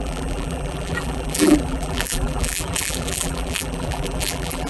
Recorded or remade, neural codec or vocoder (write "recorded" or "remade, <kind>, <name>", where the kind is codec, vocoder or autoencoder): remade, vocoder, BigVGAN v2